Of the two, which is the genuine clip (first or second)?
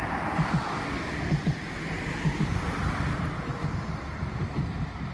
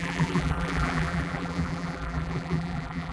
first